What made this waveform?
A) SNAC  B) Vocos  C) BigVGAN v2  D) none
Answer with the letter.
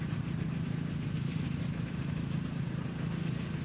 C